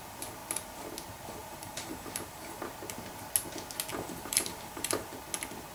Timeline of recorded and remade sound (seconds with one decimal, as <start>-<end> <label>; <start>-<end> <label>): 0.0-1.4 recorded; 1.4-2.6 remade; 2.6-3.9 recorded; 3.9-5.1 remade; 5.1-5.7 recorded